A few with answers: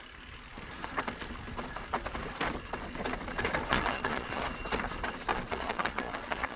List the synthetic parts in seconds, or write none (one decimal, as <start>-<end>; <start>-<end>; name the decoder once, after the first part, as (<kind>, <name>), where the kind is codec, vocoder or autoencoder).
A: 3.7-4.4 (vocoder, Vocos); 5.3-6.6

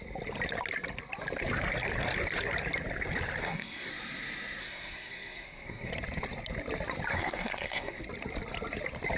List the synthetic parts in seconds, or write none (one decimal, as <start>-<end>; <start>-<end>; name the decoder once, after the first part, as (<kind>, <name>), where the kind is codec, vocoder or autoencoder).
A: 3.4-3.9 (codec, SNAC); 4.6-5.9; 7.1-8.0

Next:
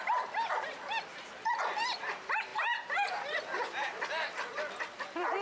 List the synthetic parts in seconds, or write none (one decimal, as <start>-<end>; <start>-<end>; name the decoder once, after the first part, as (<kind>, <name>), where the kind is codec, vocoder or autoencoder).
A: 0.0-5.4 (vocoder, BigVGAN v2)